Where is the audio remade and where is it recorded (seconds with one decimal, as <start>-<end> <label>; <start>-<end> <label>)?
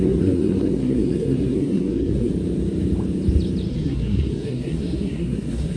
0.0-2.3 remade; 2.3-3.7 recorded; 3.7-5.8 remade